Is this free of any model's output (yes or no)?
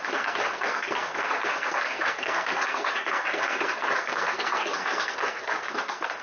no